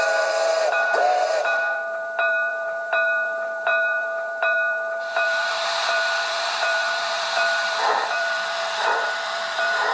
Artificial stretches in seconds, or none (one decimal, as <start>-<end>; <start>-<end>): 0.0-9.9